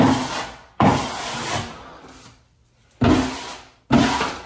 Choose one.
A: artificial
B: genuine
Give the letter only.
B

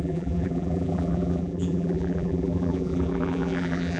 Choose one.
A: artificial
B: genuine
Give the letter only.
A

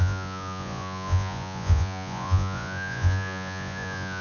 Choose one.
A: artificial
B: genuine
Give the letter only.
A